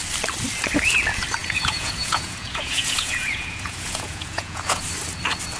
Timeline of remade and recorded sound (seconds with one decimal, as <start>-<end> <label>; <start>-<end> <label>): 0.0-1.4 recorded; 1.4-4.8 remade; 4.8-5.6 recorded